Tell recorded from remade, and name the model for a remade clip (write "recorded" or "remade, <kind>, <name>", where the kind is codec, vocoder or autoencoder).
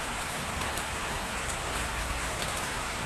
remade, codec, SNAC